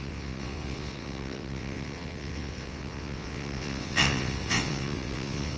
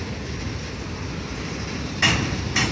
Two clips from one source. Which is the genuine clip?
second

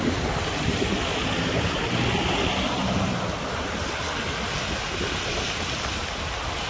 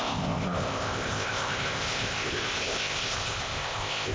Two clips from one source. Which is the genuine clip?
first